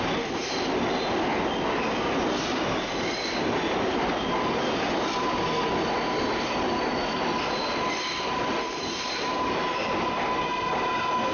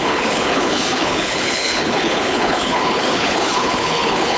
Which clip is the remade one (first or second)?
second